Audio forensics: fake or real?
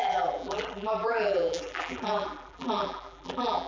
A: fake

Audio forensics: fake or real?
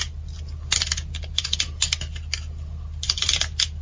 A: real